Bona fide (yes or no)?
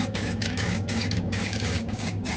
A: no